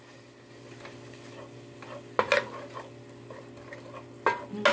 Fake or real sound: real